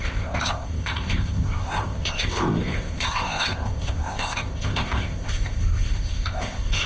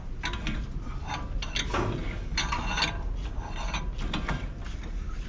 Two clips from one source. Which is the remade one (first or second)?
first